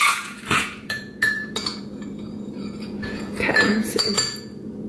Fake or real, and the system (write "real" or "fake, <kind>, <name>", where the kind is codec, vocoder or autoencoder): fake, vocoder, Vocos